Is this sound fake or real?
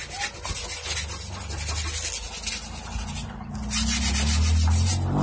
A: real